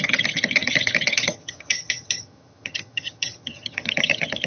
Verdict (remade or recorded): remade